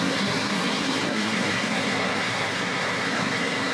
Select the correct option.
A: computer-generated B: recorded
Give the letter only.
A